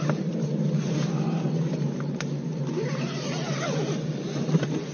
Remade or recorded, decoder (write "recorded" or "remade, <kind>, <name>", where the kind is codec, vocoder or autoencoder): recorded